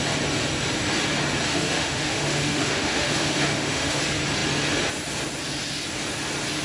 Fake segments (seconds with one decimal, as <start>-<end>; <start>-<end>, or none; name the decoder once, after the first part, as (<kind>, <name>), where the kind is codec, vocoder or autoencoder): 1.5-4.0 (autoencoder, DAC-VAE)